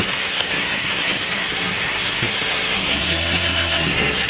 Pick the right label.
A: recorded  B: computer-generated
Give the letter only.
B